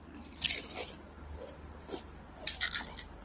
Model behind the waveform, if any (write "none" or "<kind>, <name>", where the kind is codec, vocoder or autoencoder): vocoder, BigVGAN v2